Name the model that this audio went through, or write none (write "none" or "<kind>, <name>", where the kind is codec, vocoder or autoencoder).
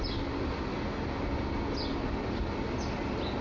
none